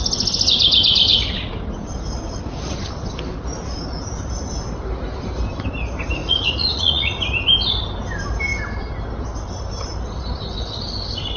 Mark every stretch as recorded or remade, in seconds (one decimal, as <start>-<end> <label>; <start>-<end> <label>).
0.0-6.2 recorded; 6.2-7.2 remade; 7.2-11.4 recorded